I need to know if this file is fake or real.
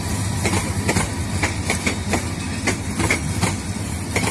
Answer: fake